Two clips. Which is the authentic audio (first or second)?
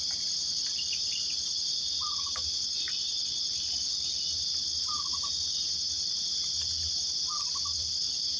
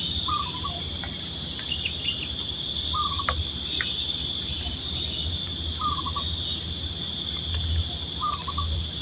first